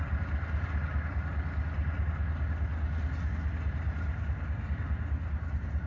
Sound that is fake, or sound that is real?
real